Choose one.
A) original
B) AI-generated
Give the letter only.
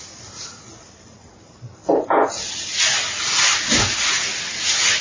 A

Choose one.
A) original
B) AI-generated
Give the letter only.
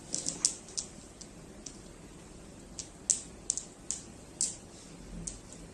A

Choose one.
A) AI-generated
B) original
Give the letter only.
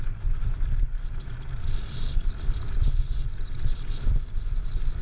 B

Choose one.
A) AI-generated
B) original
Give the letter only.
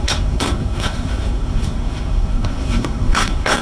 A